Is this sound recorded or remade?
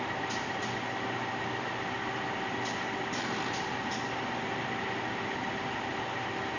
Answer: recorded